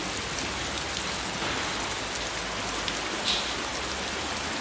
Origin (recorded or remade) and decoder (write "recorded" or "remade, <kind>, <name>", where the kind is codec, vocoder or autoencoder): recorded